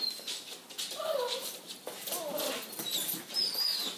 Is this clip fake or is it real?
real